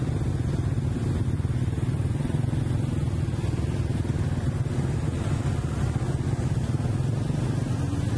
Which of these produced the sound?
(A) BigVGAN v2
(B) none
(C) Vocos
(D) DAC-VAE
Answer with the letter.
B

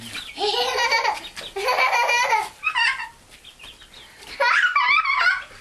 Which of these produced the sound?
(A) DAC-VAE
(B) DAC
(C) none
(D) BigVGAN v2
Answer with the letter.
C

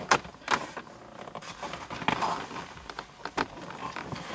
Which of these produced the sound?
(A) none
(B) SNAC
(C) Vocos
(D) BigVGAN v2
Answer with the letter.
A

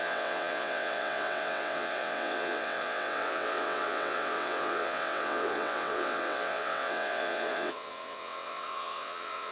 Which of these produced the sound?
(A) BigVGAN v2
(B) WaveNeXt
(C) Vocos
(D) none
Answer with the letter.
B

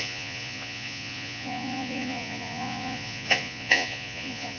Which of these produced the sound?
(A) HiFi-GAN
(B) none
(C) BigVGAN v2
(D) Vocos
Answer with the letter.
D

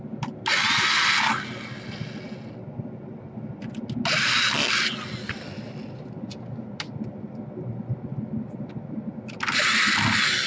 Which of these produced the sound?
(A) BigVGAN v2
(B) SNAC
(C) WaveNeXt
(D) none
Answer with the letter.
D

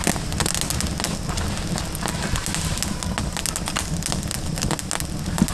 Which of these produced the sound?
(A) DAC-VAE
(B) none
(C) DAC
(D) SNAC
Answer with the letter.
B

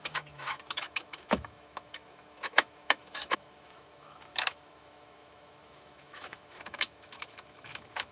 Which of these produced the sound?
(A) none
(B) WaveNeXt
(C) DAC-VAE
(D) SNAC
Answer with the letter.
C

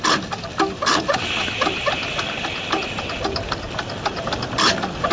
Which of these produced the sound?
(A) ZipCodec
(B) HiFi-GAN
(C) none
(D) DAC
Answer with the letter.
C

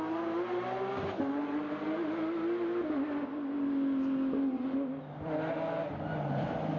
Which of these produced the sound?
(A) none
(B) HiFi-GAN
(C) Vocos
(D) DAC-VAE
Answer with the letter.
A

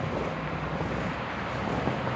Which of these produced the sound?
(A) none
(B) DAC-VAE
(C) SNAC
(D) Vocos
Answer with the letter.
A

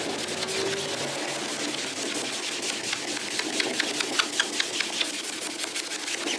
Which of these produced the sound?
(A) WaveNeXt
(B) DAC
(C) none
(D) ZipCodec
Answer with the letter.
C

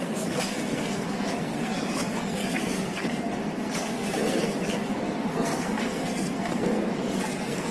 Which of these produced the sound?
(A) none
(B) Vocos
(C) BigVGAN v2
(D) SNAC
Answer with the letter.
D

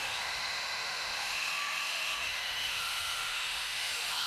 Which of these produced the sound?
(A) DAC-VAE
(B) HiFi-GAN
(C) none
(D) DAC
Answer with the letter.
A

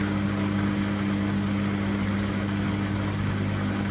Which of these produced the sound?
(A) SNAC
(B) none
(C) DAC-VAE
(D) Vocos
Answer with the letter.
B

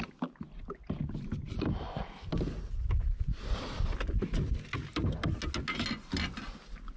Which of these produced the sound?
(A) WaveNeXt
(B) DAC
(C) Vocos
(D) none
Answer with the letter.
D